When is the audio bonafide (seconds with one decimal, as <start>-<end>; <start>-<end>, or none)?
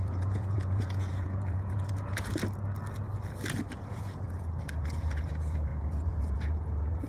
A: 2.3-3.7